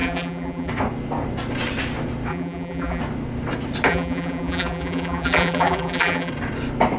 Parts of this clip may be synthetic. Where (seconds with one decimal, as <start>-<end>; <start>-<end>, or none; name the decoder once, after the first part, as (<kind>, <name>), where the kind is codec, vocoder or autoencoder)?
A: 0.0-0.7 (vocoder, BigVGAN v2); 2.3-3.0; 3.9-6.3